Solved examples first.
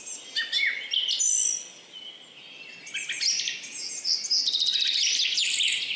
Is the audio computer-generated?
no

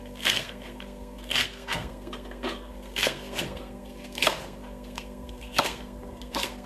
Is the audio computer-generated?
yes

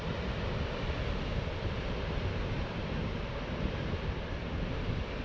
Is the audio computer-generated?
no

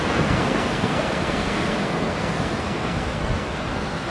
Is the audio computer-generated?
yes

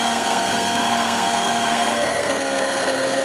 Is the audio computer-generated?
yes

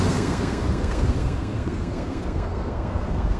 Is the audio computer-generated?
yes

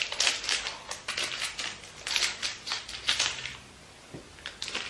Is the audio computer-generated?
no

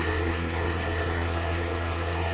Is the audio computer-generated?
yes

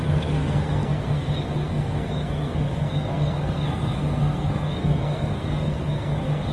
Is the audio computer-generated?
yes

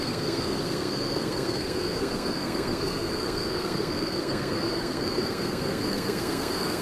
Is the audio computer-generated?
yes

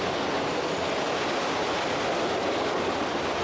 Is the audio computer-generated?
no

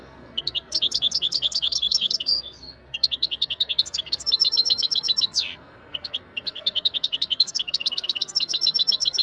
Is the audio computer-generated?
yes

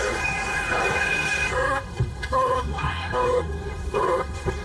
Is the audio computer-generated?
yes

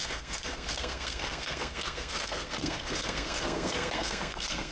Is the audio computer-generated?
yes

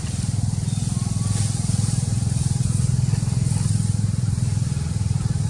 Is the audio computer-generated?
no